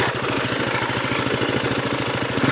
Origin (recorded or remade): recorded